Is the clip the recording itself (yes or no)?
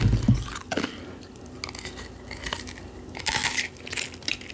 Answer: yes